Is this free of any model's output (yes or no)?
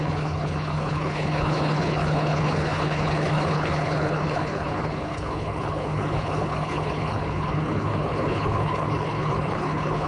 no